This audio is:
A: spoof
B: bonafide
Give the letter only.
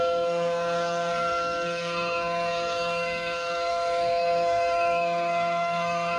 A